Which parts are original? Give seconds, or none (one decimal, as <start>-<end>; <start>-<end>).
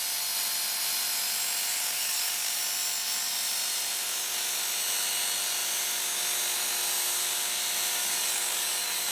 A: 0.0-1.7; 2.6-8.0